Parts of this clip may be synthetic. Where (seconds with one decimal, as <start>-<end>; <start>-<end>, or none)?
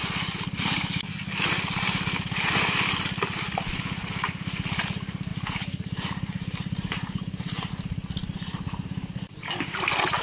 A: 5.3-7.7